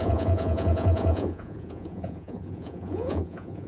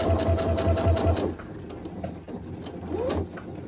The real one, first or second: second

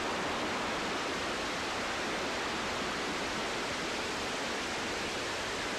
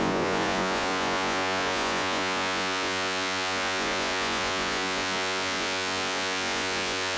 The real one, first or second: first